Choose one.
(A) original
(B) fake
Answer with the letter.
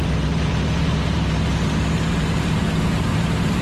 B